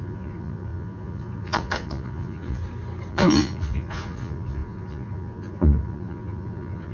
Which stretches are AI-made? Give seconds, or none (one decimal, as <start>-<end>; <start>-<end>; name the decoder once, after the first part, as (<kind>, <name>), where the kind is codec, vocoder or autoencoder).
0.0-2.6 (vocoder, Vocos); 3.1-6.9